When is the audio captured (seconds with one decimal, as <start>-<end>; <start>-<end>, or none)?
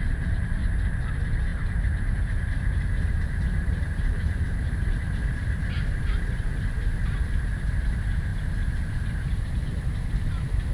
0.6-1.1